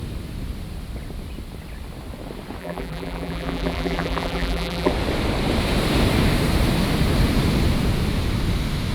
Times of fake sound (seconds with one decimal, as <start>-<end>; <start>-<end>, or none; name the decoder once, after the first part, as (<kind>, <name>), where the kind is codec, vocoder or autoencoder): 2.6-4.9 (vocoder, BigVGAN v2)